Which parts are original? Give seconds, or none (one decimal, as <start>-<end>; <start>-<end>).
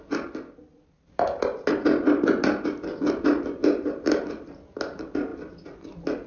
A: 0.0-6.3